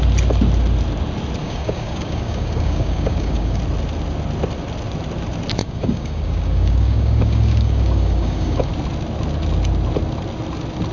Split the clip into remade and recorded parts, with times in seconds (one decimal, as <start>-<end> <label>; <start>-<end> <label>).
0.0-1.4 recorded; 1.4-3.6 remade; 3.6-5.6 recorded; 5.6-8.7 remade; 8.7-10.9 recorded